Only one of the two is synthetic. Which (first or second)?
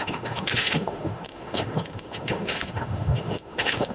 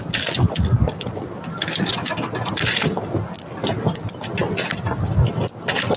first